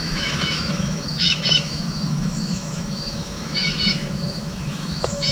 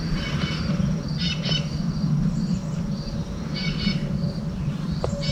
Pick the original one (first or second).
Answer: second